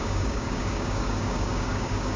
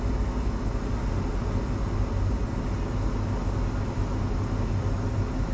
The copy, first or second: first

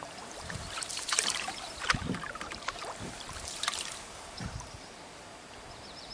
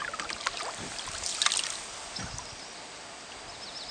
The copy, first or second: first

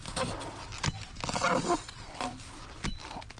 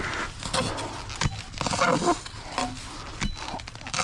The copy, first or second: first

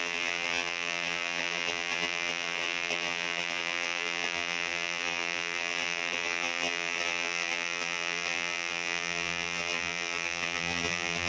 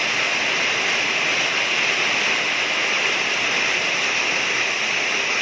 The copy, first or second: first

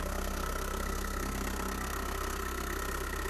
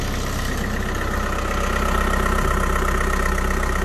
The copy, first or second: first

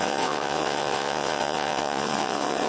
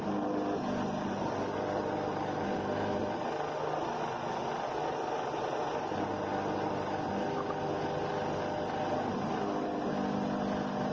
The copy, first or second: first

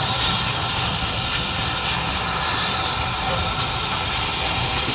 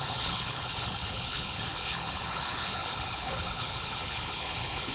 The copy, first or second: second